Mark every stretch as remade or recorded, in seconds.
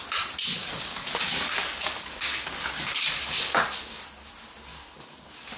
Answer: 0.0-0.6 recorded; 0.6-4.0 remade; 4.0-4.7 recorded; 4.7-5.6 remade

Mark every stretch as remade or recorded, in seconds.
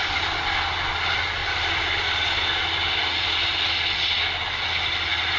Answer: 0.0-5.4 recorded